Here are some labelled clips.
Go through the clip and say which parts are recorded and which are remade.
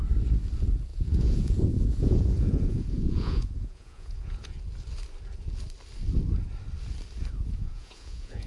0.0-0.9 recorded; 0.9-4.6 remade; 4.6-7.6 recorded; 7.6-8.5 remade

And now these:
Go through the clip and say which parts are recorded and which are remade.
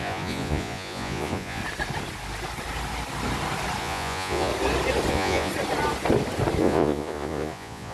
0.0-1.6 remade; 1.6-3.8 recorded; 3.8-4.5 remade; 4.5-5.1 recorded; 5.1-5.5 remade; 5.5-6.6 recorded; 6.6-7.9 remade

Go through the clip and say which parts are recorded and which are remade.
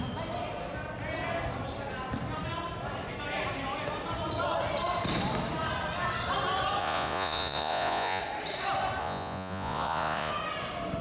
0.0-6.8 recorded; 6.8-8.2 remade; 8.2-9.0 recorded; 9.0-10.3 remade; 10.3-11.0 recorded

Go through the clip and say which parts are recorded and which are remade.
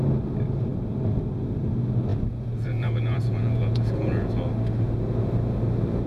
0.0-2.1 recorded; 2.1-4.3 remade; 4.3-6.1 recorded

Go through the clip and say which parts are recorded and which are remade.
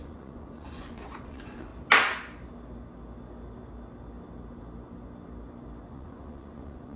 0.0-1.7 remade; 1.7-5.9 recorded; 5.9-7.0 remade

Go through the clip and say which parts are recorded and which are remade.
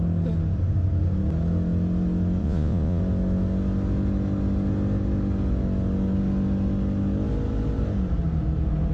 0.0-2.4 recorded; 2.4-3.0 remade; 3.0-8.9 recorded